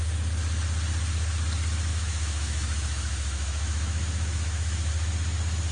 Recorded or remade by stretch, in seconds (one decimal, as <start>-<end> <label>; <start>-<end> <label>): 0.0-1.9 recorded; 1.9-4.9 remade; 4.9-5.7 recorded